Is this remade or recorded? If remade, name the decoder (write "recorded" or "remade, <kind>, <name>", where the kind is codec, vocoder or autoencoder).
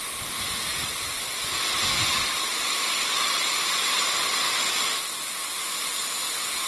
recorded